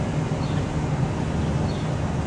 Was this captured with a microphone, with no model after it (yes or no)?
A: yes